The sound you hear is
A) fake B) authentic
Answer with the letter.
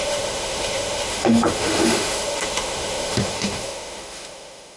A